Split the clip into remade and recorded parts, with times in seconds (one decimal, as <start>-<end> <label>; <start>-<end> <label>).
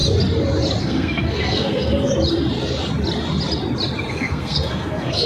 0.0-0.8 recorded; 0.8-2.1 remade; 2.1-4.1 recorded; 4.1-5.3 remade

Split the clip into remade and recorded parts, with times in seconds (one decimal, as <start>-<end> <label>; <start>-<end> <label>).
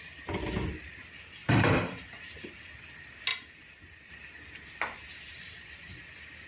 0.0-1.4 recorded; 1.4-2.5 remade; 2.5-5.3 recorded; 5.3-6.0 remade; 6.0-6.5 recorded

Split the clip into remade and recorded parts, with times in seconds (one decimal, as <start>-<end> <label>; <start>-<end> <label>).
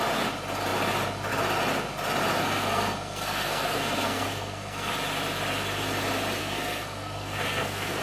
0.0-2.4 recorded; 2.4-4.9 remade; 4.9-6.4 recorded; 6.4-8.0 remade